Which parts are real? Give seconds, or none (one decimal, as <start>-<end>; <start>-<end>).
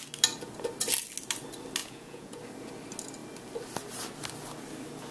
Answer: 0.0-1.8; 2.4-5.1